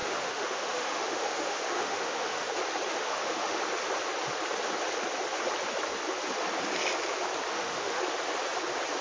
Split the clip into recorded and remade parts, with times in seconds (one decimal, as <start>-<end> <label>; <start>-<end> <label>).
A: 0.0-2.5 remade; 2.5-2.9 recorded; 2.9-3.6 remade; 3.6-7.5 recorded; 7.5-8.0 remade; 8.0-9.0 recorded